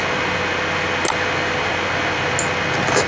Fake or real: real